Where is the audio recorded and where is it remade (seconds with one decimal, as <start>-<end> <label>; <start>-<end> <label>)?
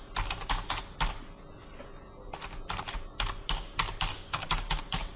0.0-4.1 recorded; 4.1-4.8 remade; 4.8-5.2 recorded